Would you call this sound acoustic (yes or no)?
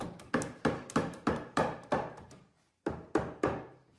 no